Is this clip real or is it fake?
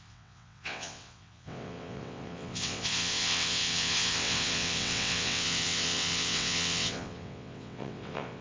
fake